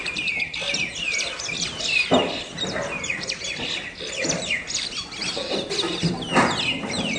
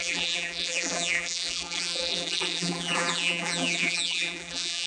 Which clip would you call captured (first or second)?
first